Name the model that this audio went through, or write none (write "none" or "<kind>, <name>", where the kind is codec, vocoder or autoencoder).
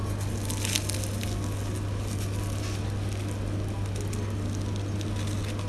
none